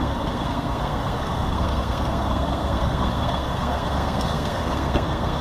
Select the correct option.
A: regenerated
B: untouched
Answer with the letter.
A